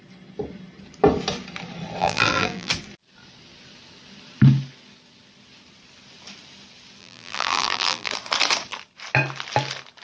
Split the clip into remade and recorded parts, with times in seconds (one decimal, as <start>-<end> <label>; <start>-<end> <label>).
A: 0.0-2.0 recorded; 2.0-2.7 remade; 2.7-7.0 recorded; 7.0-8.1 remade; 8.1-10.0 recorded

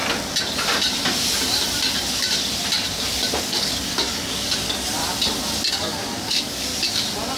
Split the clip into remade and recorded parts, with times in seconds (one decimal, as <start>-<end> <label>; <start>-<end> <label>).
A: 0.0-3.4 recorded; 3.4-5.0 remade; 5.0-5.7 recorded; 5.7-6.7 remade; 6.7-7.4 recorded

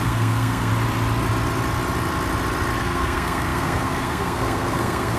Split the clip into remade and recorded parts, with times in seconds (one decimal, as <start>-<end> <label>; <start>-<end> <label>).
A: 0.0-0.7 remade; 0.7-2.8 recorded; 2.8-5.2 remade

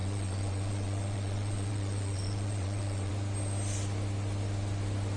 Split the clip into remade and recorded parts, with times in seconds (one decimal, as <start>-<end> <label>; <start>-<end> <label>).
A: 0.0-3.1 remade; 3.1-5.2 recorded

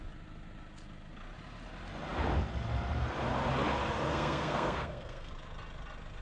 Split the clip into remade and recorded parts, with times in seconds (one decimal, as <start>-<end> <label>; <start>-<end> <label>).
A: 0.0-4.1 recorded; 4.1-5.3 remade; 5.3-6.2 recorded

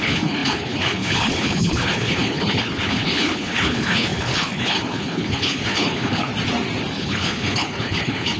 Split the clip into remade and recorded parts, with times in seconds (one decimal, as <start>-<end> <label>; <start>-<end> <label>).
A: 0.0-6.3 remade; 6.3-6.9 recorded; 6.9-8.4 remade

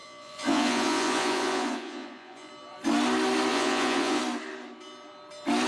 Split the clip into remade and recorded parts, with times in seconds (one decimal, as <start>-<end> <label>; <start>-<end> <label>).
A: 0.0-2.5 remade; 2.5-3.5 recorded; 3.5-4.2 remade; 4.2-5.7 recorded